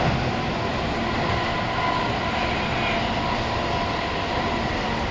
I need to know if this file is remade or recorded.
recorded